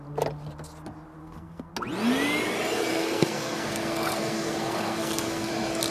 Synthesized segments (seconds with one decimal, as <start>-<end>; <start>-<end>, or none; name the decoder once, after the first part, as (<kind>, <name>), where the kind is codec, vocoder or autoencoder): 1.2-1.7 (codec, SNAC); 2.9-5.5